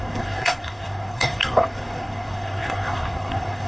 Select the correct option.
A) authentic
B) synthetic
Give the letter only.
B